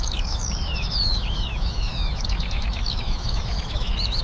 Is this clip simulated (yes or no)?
yes